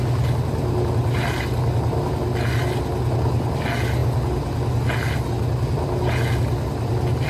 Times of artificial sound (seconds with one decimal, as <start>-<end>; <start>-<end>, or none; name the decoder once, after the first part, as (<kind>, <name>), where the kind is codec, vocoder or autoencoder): none